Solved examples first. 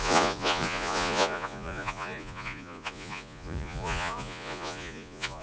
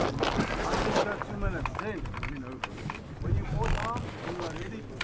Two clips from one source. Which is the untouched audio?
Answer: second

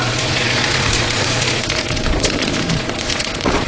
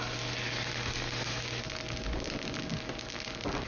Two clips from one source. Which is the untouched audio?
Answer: second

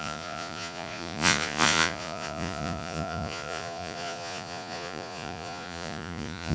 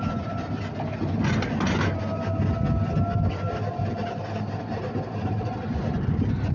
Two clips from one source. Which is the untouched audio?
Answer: second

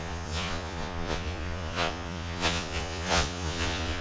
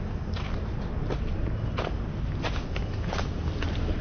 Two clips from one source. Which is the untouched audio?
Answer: second